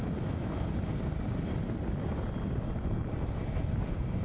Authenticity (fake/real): real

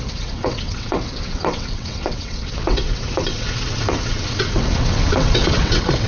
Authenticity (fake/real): fake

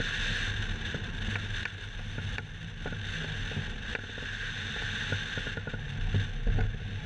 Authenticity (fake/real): real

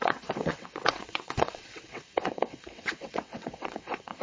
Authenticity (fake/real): fake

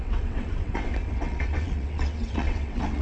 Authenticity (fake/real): fake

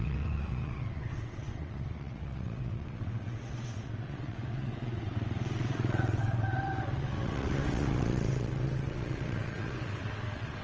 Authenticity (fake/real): fake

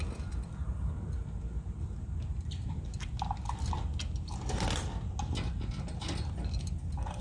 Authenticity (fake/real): real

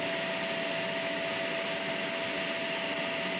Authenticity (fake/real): real